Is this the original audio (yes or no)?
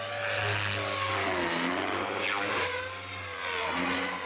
yes